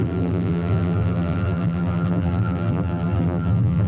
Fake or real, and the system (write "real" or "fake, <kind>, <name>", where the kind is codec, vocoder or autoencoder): fake, vocoder, BigVGAN v2